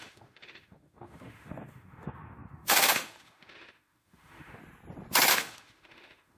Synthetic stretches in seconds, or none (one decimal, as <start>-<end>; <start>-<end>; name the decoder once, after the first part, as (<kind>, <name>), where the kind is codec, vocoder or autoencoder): 0.0-4.6 (autoencoder, DAC-VAE); 5.3-6.4